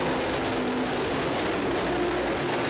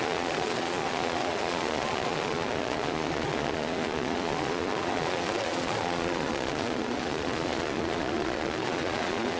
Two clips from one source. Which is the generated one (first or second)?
second